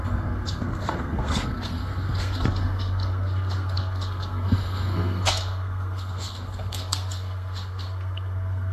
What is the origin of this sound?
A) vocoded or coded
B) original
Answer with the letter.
A